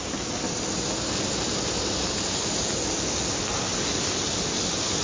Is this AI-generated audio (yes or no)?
no